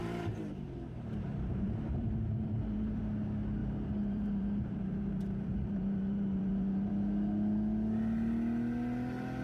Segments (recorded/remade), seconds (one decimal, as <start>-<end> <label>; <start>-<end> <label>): 0.0-3.0 remade; 3.0-3.6 recorded; 3.6-6.9 remade; 6.9-9.4 recorded